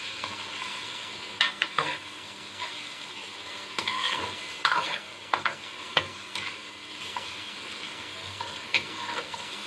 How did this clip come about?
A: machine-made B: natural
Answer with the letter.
A